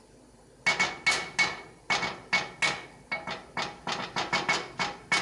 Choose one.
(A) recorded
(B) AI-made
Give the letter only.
A